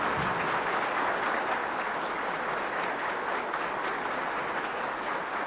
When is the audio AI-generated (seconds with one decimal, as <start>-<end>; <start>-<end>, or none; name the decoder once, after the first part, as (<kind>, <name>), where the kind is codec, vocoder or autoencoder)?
none